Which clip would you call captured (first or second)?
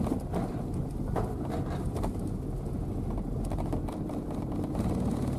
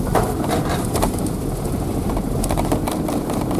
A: first